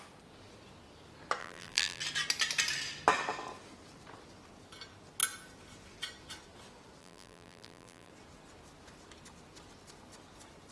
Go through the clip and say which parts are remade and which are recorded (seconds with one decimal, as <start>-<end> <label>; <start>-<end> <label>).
0.0-1.4 recorded; 1.4-2.0 remade; 2.0-7.0 recorded; 7.0-8.1 remade; 8.1-10.7 recorded